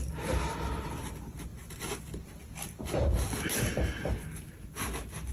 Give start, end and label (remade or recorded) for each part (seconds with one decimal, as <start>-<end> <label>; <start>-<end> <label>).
0.0-5.3 recorded